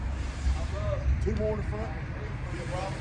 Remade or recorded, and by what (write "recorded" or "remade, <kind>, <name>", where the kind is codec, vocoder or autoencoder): remade, vocoder, BigVGAN v2